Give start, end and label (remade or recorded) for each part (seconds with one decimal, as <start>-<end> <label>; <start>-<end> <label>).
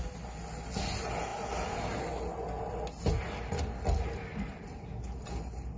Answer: 0.0-5.8 recorded